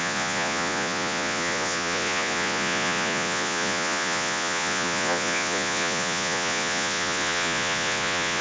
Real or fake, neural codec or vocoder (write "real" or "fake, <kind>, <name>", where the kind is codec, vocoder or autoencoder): fake, vocoder, Vocos